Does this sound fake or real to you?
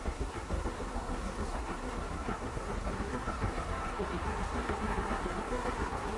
fake